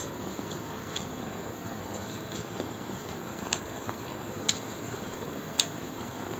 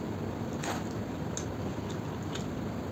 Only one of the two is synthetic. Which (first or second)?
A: first